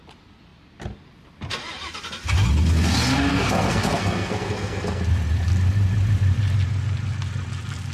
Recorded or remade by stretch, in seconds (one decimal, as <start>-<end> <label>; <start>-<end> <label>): 0.0-3.3 recorded; 3.3-5.0 remade; 5.0-7.9 recorded